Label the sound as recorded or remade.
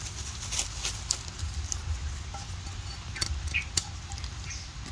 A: recorded